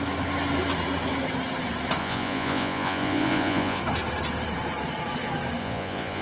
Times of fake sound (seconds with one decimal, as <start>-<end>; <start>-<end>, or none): 2.0-3.8; 5.6-6.2